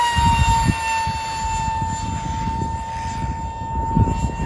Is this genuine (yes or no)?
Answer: yes